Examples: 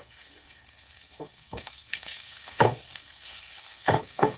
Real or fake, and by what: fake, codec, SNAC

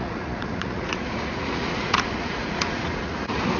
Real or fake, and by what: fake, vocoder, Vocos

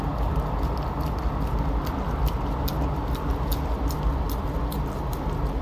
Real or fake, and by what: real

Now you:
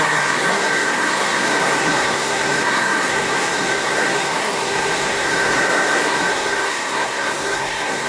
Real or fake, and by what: fake, codec, SNAC